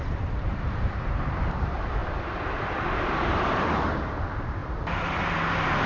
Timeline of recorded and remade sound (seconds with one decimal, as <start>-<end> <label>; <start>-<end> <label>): 0.0-4.6 remade; 4.6-5.9 recorded